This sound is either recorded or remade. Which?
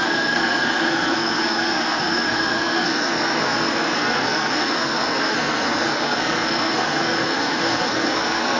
remade